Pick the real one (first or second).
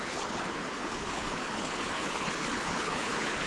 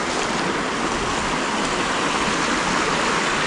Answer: second